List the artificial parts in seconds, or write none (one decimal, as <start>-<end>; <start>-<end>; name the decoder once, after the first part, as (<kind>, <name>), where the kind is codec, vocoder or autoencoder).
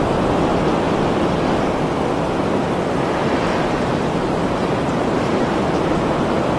3.5-5.8 (vocoder, BigVGAN v2)